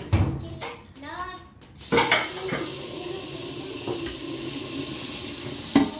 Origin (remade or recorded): recorded